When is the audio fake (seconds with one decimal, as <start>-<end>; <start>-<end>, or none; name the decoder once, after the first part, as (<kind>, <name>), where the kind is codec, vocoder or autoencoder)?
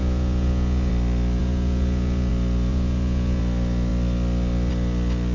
0.0-0.9 (vocoder, Vocos); 1.4-2.3; 2.7-3.4